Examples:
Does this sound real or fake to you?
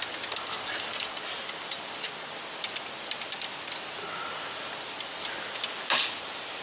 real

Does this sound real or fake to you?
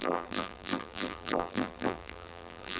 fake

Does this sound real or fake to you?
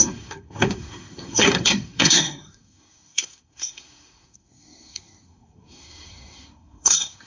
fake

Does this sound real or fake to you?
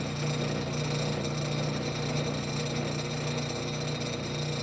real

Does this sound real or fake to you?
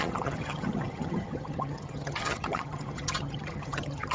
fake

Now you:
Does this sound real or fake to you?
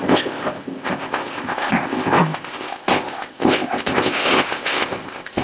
fake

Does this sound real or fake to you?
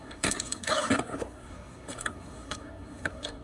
fake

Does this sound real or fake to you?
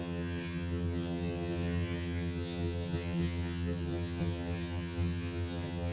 fake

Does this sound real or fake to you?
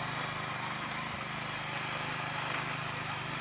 real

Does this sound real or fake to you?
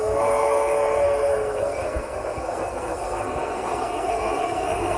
fake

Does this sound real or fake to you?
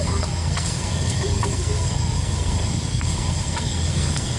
fake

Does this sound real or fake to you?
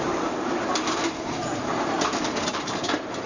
fake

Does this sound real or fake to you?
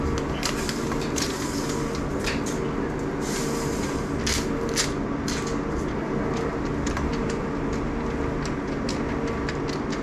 real